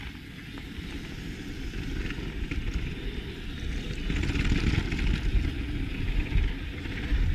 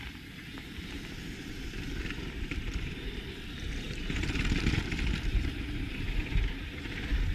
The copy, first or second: second